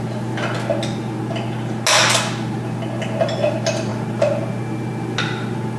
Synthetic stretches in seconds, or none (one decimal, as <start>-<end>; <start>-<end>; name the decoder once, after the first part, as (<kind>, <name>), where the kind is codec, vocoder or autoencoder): none